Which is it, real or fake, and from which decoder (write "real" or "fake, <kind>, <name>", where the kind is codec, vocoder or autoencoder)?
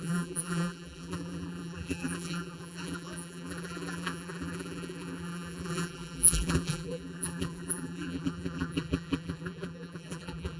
fake, vocoder, BigVGAN v2